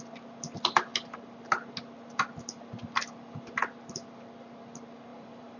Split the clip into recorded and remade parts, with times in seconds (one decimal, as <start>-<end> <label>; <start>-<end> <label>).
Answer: 0.0-5.1 recorded; 5.1-5.6 remade